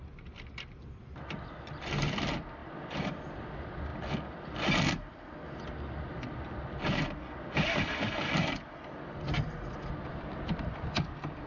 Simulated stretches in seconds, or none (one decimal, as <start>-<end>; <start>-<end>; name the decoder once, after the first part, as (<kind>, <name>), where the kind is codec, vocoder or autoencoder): 2.6-3.2 (vocoder, BigVGAN v2)